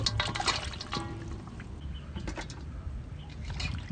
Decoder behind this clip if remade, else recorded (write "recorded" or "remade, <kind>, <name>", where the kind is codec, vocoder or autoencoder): recorded